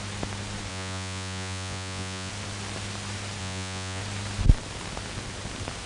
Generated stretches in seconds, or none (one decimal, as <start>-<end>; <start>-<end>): 0.7-2.3; 3.4-4.0